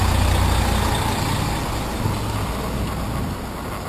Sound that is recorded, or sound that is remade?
recorded